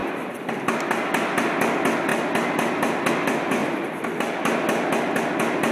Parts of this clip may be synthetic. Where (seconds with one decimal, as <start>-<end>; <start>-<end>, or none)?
0.0-0.7; 3.6-4.2